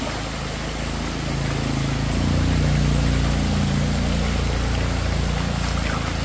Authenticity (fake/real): real